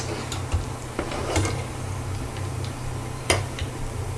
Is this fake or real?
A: fake